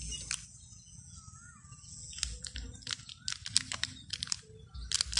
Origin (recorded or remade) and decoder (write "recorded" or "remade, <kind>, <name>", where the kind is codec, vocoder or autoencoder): recorded